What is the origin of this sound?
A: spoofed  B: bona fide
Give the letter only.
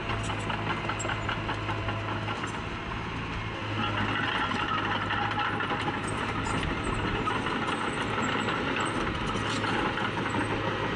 B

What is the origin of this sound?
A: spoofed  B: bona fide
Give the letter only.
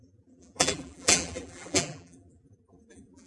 A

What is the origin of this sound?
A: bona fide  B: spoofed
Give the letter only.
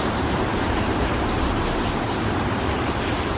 B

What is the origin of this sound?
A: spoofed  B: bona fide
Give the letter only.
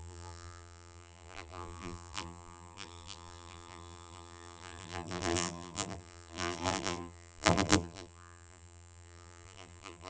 A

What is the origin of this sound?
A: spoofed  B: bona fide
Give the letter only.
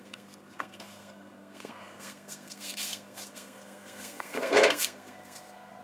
A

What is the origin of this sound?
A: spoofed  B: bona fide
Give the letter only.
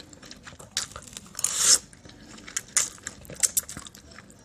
B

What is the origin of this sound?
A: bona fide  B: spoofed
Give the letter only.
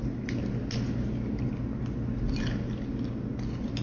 A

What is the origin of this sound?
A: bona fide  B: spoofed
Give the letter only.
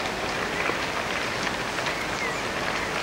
A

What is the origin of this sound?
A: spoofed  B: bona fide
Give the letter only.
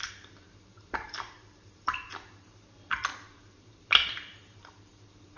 A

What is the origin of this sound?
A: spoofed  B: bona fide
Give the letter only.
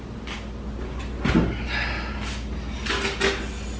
B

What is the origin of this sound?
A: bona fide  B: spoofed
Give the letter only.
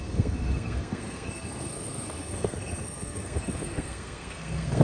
B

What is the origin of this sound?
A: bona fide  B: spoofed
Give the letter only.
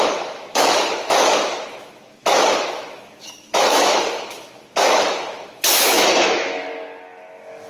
B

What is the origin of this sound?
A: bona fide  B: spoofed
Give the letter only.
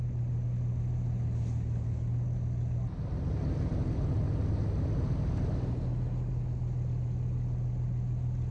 A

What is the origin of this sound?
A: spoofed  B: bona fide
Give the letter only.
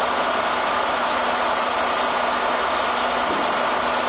B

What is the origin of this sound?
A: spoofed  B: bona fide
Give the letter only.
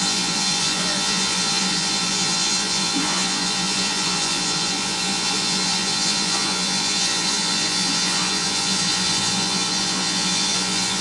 A